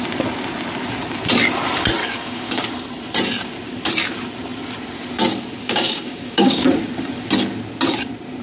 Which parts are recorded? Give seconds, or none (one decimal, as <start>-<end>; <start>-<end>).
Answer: 0.0-2.0; 2.6-5.6; 6.8-8.4